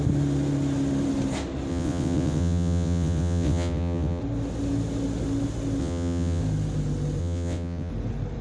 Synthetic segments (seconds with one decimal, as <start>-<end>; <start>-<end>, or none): 1.7-4.2; 5.8-6.4; 7.2-7.9